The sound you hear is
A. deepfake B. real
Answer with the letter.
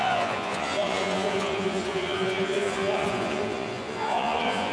A